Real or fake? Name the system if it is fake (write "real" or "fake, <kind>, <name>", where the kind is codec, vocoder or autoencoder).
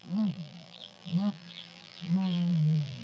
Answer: fake, vocoder, BigVGAN v2